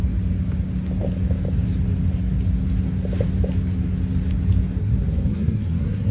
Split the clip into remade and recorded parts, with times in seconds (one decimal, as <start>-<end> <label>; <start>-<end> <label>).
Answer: 0.0-4.8 recorded; 4.8-6.1 remade